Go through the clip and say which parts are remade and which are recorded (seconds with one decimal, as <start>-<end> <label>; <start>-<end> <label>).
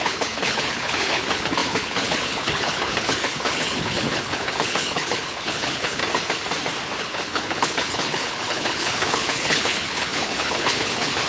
0.0-6.0 remade; 6.0-7.0 recorded; 7.0-11.3 remade